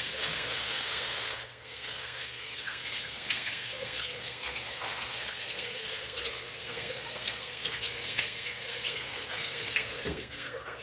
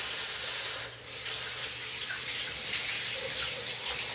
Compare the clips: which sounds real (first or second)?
second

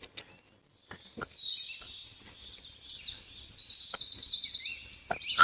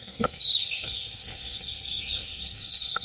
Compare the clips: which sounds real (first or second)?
first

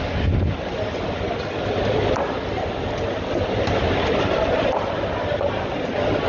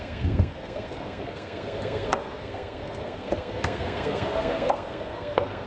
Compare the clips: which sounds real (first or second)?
first